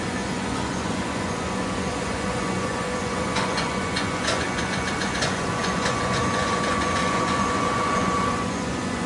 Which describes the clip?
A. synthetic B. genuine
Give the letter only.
A